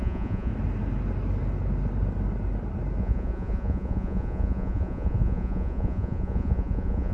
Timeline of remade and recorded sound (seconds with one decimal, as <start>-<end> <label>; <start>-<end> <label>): 0.0-0.5 remade; 0.5-3.0 recorded; 3.0-7.1 remade